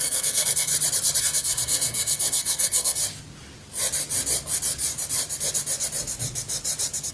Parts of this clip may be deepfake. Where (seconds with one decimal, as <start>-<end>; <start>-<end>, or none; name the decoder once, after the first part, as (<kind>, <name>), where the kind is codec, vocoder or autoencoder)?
0.0-0.7 (codec, SNAC); 1.2-3.0